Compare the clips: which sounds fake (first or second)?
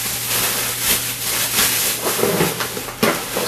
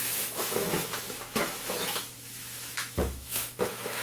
second